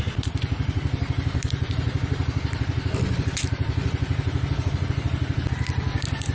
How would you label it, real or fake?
real